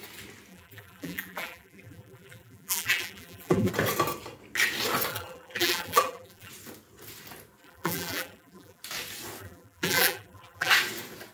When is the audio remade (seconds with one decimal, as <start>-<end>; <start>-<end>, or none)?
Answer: 0.5-3.7; 5.1-6.5; 7.6-8.8; 9.4-10.7

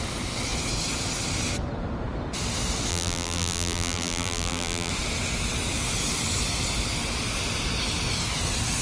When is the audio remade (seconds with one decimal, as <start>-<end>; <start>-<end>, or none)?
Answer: 2.9-4.9

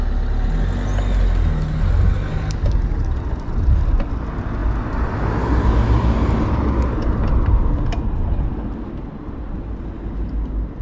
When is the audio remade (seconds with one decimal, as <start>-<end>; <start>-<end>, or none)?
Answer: 9.1-9.6

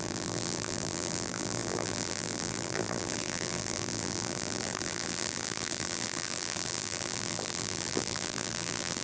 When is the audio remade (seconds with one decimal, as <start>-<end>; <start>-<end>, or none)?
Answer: 0.0-9.0

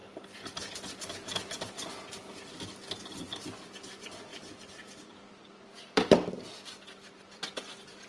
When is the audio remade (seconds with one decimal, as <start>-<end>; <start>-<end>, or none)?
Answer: 4.3-7.4